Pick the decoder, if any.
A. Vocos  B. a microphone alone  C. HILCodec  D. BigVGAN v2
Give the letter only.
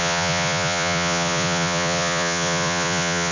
A